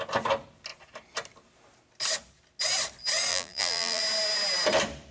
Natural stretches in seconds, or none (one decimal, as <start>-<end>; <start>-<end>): 0.0-3.3; 4.0-5.1

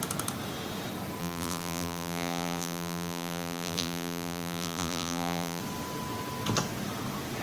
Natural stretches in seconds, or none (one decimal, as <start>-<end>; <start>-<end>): 0.0-1.2; 5.6-7.4

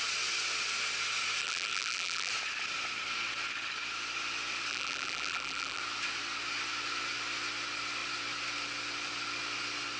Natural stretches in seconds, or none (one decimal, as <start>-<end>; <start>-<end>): 0.0-1.4; 2.3-4.7; 5.8-10.0